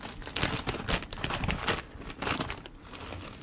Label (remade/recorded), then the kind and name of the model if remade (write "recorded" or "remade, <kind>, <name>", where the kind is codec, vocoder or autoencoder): recorded